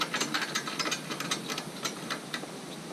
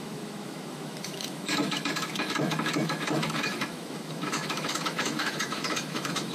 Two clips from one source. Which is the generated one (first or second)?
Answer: second